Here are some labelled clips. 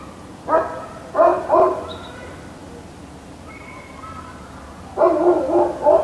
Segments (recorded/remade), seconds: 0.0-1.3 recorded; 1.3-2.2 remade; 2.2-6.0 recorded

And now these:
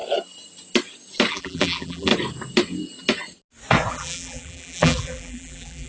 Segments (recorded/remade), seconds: 0.0-1.3 recorded; 1.3-2.1 remade; 2.1-3.9 recorded; 3.9-5.9 remade

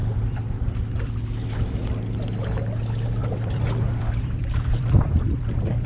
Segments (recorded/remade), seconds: 0.0-1.1 remade; 1.1-3.2 recorded; 3.2-5.9 remade

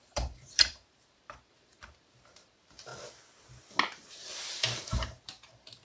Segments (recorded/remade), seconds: 0.0-2.9 remade; 2.9-4.5 recorded; 4.5-5.8 remade

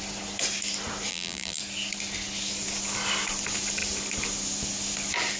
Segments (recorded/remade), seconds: 0.0-1.1 recorded; 1.1-1.6 remade; 1.6-5.4 recorded